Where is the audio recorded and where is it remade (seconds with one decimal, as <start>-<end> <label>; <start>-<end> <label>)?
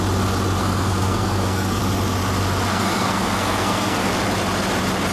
0.0-0.6 recorded; 0.6-1.8 remade; 1.8-2.7 recorded; 2.7-4.1 remade; 4.1-5.1 recorded